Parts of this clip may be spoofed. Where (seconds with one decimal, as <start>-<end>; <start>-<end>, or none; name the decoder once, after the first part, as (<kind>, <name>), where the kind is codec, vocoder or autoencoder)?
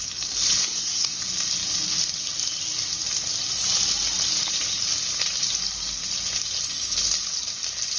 0.6-1.2 (codec, SNAC)